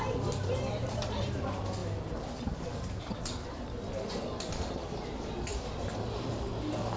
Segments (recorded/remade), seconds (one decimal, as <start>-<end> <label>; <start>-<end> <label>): 0.0-5.5 recorded; 5.5-6.3 remade; 6.3-7.0 recorded